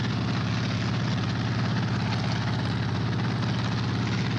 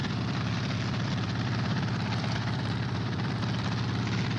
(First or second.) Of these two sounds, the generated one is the second